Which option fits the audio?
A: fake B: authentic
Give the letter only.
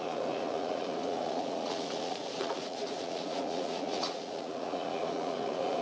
A